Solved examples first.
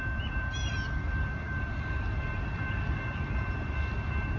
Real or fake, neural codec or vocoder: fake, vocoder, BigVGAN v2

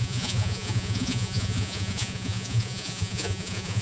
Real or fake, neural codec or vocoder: fake, vocoder, Vocos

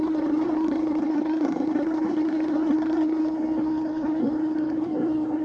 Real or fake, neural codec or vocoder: fake, codec, SNAC